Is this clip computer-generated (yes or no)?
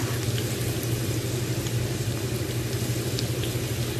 no